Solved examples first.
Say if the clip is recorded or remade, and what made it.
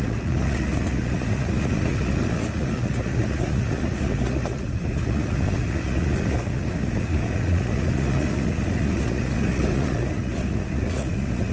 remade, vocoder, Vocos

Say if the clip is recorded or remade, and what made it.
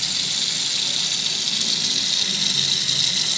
recorded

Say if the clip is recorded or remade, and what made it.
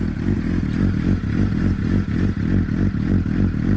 recorded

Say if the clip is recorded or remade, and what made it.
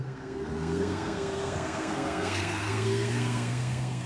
remade, codec, SNAC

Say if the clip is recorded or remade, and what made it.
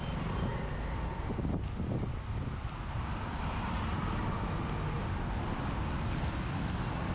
recorded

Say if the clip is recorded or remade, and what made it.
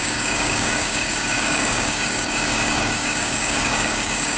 remade, codec, DAC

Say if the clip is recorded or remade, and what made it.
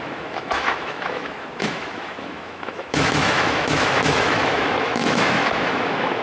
remade, autoencoder, DAC-VAE